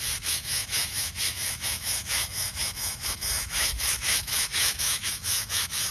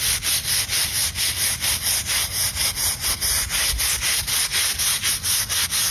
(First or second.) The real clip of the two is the second